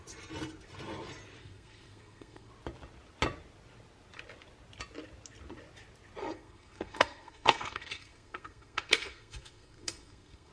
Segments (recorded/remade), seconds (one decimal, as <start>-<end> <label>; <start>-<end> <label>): 0.0-1.4 recorded; 1.4-2.5 remade; 2.5-6.2 recorded; 6.2-10.5 remade